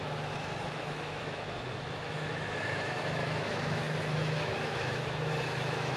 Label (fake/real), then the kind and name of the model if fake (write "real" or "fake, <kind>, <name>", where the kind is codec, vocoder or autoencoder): fake, autoencoder, DAC-VAE